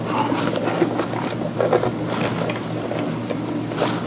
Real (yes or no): yes